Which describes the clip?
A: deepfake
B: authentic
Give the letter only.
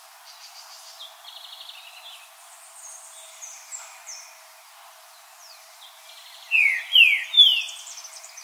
B